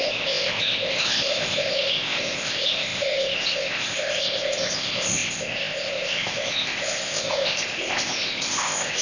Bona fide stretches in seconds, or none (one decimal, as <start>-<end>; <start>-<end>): none